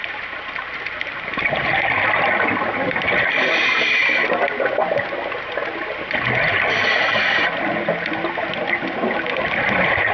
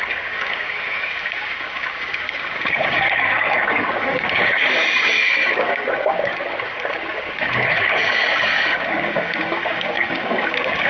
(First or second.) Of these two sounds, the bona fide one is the first